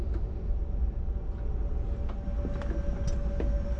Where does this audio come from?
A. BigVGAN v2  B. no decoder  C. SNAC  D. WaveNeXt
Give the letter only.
B